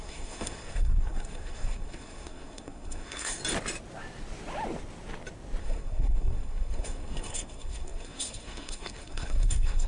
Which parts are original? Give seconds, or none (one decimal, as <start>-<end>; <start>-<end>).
3.4-5.6